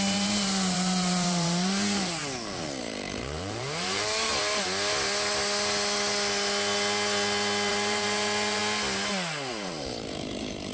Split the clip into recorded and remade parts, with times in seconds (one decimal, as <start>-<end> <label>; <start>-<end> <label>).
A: 0.0-2.2 remade; 2.2-2.8 recorded; 2.8-4.3 remade; 4.3-7.7 recorded; 7.7-8.6 remade; 8.6-9.5 recorded; 9.5-10.7 remade